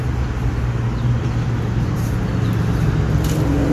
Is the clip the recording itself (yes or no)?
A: yes